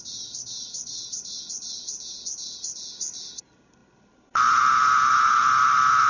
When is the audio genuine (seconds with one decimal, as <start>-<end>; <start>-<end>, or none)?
0.0-6.1